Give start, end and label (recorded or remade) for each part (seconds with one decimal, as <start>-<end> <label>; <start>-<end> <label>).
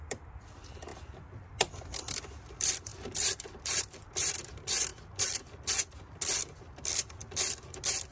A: 0.0-4.9 remade; 4.9-6.6 recorded; 6.6-7.2 remade; 7.2-8.1 recorded